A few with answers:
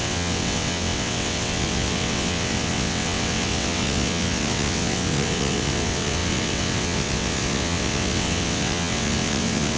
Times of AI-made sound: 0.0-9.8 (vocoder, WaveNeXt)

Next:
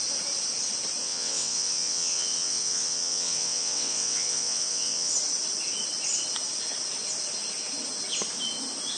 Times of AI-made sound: 1.0-5.1 (vocoder, WaveNeXt)

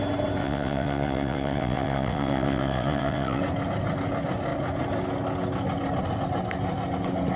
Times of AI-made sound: 0.4-3.4 (vocoder, WaveNeXt)

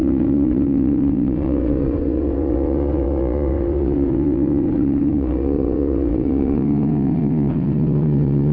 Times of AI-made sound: 0.0-8.5 (vocoder, WaveNeXt)

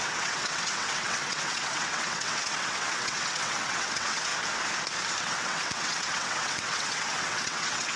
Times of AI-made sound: 0.0-4.3 (vocoder, WaveNeXt); 5.2-8.0

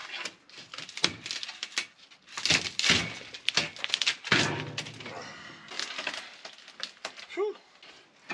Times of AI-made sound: none

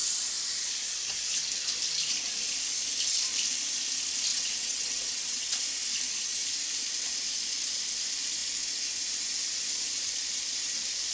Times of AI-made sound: 4.3-5.6 (vocoder, WaveNeXt)